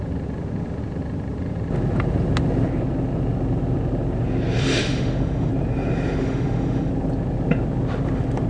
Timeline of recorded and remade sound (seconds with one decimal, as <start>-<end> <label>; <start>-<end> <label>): 0.0-4.6 recorded; 4.6-5.5 remade; 5.5-6.2 recorded; 6.2-6.9 remade; 6.9-8.5 recorded